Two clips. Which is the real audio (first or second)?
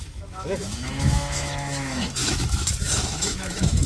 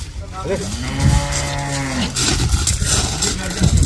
second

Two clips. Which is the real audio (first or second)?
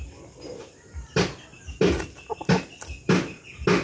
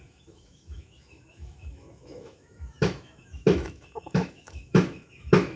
first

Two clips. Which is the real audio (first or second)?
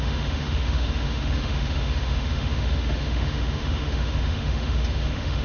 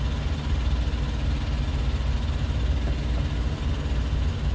second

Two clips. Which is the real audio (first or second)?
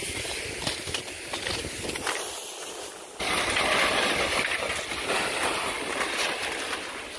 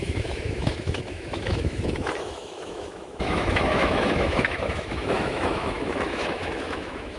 first